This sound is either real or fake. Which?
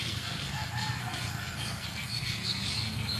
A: fake